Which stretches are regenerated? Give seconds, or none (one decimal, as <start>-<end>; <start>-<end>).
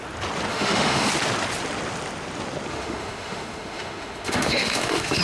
0.5-1.1; 2.7-5.2